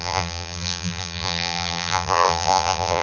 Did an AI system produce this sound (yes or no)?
yes